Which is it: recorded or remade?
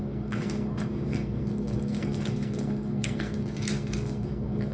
remade